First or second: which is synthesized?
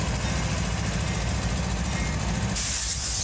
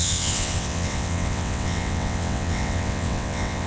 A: second